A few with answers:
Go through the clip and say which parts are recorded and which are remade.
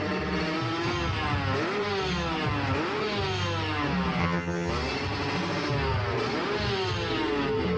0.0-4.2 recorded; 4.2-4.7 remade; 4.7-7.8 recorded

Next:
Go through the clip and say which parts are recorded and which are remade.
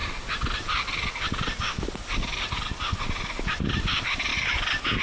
0.0-5.0 recorded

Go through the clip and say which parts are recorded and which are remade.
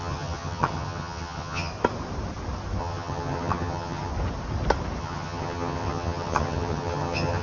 0.0-1.7 remade; 1.7-2.8 recorded; 2.8-4.1 remade; 4.1-5.0 recorded; 5.0-7.4 remade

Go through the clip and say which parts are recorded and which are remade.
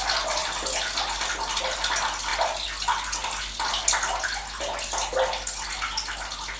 0.0-6.6 recorded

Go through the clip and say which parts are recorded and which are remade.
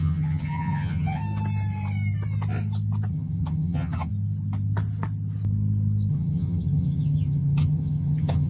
0.0-1.2 remade; 1.2-3.1 recorded; 3.1-4.1 remade; 4.1-6.1 recorded; 6.1-8.5 remade